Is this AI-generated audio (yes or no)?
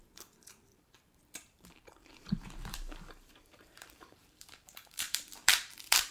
yes